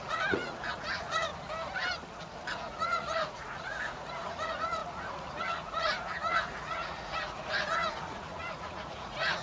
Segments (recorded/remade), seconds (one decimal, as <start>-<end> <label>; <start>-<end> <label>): 0.0-1.3 remade; 1.3-2.5 recorded; 2.5-9.4 remade